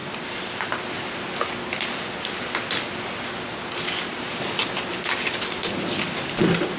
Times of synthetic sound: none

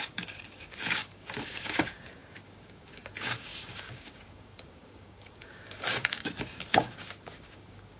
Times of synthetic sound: 0.0-8.0 (codec, DAC)

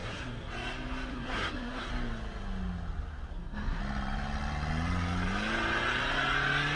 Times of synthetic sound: 0.0-0.5 (codec, SNAC); 1.1-1.9; 3.3-3.8

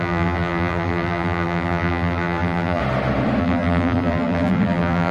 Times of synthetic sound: 0.0-2.8 (vocoder, BigVGAN v2); 3.4-5.1

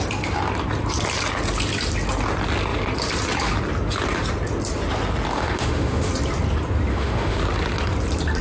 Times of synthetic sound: 5.3-6.1 (autoencoder, DAC-VAE); 6.9-7.4

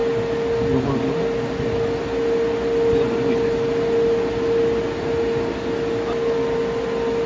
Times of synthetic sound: none

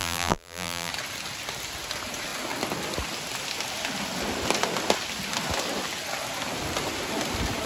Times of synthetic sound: 0.0-0.9 (vocoder, BigVGAN v2)

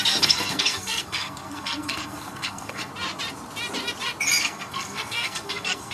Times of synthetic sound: 0.0-2.9 (codec, SNAC); 4.4-5.9